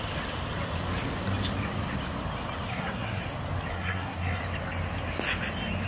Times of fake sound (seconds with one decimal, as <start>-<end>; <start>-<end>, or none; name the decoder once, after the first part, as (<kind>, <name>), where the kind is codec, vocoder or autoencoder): 2.7-3.2 (codec, SNAC); 3.7-4.4